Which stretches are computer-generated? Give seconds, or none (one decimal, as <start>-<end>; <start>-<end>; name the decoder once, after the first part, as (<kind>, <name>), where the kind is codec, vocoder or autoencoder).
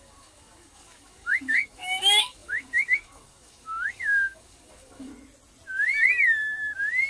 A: 0.0-5.1 (codec, DAC)